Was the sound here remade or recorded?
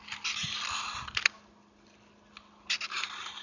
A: recorded